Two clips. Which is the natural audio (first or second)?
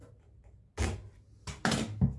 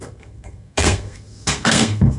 first